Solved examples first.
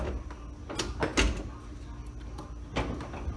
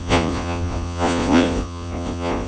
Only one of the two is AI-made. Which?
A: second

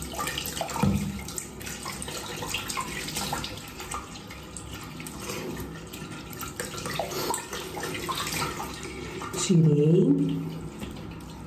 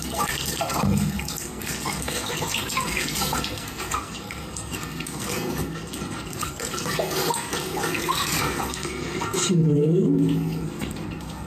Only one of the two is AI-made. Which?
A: second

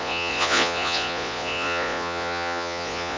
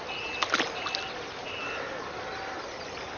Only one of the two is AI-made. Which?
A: first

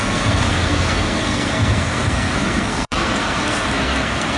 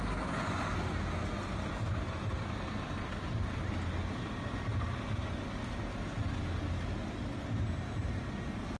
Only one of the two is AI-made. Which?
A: first